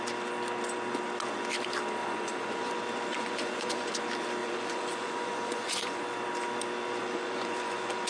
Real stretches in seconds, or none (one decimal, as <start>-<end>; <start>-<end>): 0.0-2.0; 2.7-3.1; 3.9-4.4; 6.0-7.0